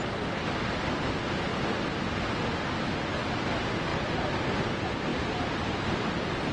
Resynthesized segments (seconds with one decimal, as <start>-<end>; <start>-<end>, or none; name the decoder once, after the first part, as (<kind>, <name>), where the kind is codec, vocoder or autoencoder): none